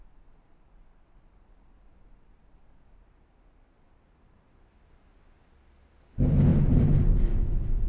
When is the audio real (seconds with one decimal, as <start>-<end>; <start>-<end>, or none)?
0.0-7.9